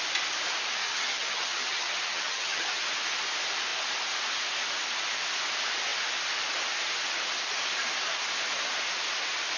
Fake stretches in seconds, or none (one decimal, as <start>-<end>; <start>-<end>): 0.8-2.8

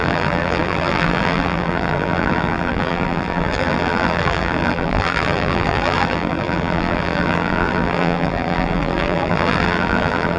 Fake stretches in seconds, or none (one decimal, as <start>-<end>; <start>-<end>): 0.0-10.4

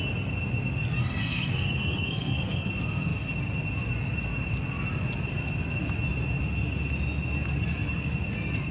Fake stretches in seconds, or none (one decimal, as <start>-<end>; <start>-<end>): 1.0-2.7

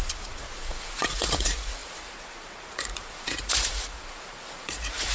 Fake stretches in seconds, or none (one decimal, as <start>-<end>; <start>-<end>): 0.0-5.1

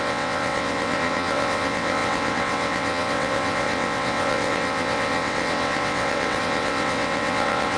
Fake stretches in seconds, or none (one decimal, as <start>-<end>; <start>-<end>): 0.0-7.8

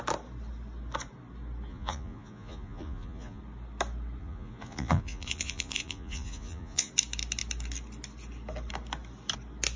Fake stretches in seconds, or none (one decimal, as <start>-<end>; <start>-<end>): 1.7-3.4; 4.2-6.9

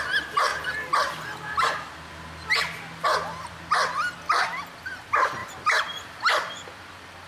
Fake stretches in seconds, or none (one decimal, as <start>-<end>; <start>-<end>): 0.5-1.9; 5.4-7.3